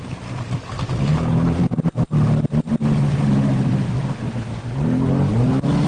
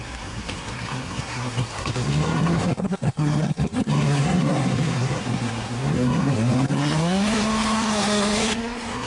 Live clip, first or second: first